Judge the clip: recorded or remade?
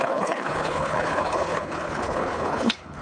remade